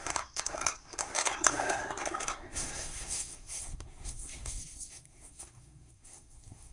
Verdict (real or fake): fake